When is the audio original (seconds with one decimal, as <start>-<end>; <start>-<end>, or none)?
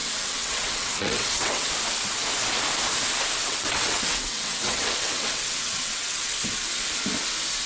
1.7-3.4; 6.5-7.7